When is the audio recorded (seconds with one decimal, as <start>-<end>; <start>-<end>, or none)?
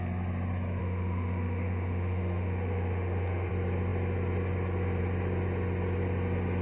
0.0-0.8; 3.5-6.6